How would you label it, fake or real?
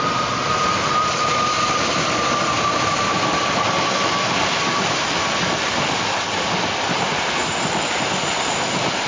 fake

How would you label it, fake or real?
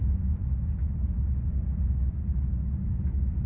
real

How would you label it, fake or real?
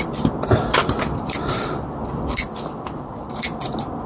real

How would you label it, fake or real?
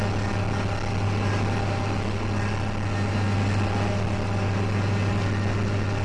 real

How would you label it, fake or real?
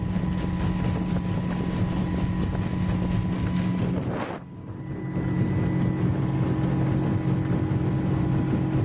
real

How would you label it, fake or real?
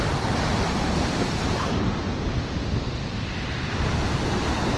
real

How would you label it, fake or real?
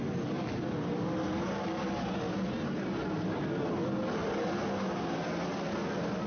real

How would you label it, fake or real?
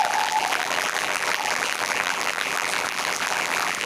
fake